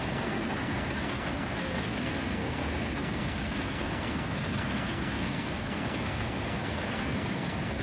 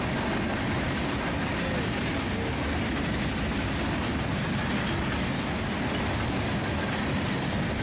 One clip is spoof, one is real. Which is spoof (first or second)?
first